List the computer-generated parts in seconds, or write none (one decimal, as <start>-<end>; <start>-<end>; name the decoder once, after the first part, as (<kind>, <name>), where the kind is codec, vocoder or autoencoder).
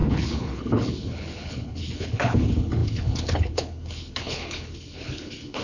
0.0-5.6 (codec, HILCodec)